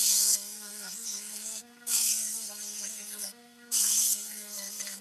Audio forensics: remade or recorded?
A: remade